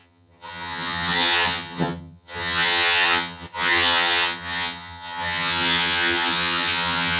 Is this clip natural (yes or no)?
no